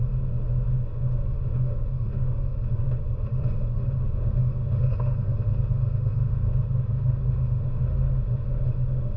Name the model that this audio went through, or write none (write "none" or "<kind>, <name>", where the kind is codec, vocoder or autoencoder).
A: autoencoder, DAC-VAE